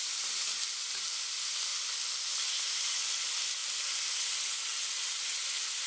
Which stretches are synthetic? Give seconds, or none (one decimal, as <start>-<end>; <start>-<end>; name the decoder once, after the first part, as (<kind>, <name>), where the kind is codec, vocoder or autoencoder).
none